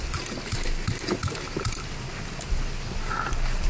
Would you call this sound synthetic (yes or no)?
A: no